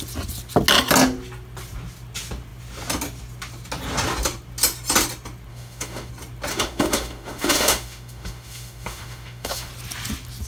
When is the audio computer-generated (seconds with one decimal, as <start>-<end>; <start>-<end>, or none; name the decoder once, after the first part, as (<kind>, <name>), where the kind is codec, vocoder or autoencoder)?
5.5-6.1 (autoencoder, DAC-VAE); 6.5-9.7

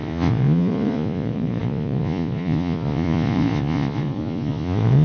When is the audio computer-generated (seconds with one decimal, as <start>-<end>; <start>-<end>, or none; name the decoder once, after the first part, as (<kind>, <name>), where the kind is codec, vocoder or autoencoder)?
0.0-5.0 (vocoder, Vocos)